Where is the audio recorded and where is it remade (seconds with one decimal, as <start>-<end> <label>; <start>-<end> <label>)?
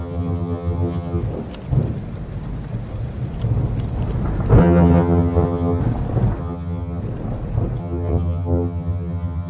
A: 0.0-1.2 remade; 1.2-4.6 recorded; 4.6-5.8 remade; 5.8-6.4 recorded; 6.4-7.0 remade; 7.0-7.8 recorded; 7.8-9.5 remade